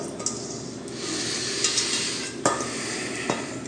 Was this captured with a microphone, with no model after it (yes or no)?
yes